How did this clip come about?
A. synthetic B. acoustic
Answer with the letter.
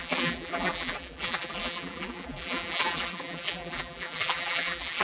A